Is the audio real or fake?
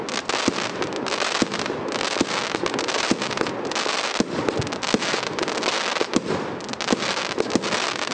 real